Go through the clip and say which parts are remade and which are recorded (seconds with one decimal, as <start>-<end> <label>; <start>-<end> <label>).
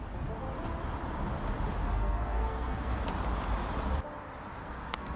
0.0-1.8 recorded; 1.8-3.1 remade; 3.1-4.6 recorded; 4.6-5.2 remade